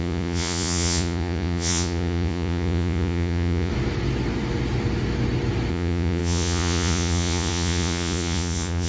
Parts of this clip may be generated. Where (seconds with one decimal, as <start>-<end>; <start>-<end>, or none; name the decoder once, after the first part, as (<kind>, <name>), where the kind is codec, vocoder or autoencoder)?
0.0-3.7 (vocoder, Vocos); 5.7-8.9